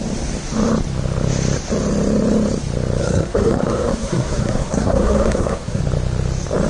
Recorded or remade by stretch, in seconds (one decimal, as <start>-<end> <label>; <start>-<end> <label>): 0.0-3.0 recorded; 3.0-5.8 remade; 5.8-6.7 recorded